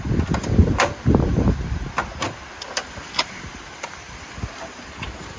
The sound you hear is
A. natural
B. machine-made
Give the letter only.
A